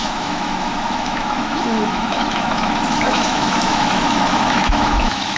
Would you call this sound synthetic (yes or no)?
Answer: yes